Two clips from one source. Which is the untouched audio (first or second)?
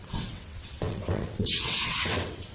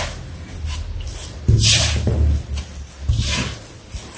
second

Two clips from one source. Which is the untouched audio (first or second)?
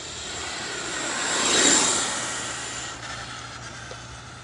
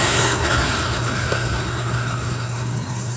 first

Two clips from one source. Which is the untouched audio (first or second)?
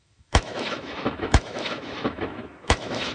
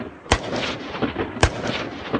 second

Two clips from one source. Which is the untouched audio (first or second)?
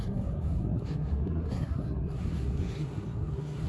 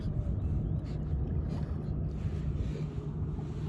second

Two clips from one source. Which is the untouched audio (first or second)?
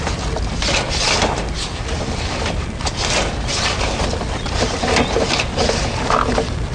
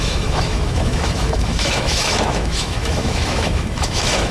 first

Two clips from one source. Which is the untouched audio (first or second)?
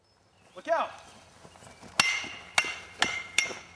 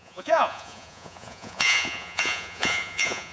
first